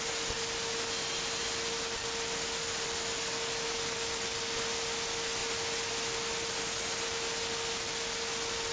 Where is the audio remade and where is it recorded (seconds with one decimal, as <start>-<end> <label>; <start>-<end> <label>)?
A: 0.0-8.7 recorded